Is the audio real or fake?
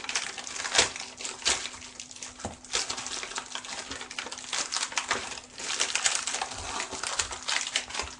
real